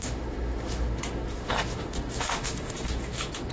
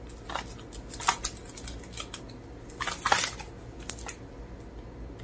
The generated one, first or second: first